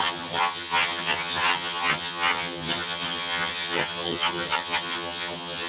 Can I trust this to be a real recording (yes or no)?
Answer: no